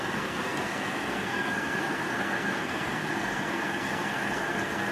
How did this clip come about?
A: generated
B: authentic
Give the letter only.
A